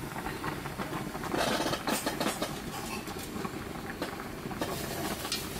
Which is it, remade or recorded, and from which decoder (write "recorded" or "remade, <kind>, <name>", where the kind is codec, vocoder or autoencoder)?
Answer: recorded